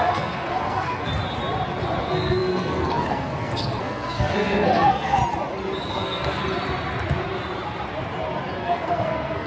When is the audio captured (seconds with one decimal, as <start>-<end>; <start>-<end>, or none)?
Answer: 1.1-2.0; 5.2-5.9; 6.4-8.6